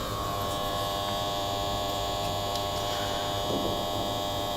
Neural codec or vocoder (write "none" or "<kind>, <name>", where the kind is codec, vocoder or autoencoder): vocoder, Vocos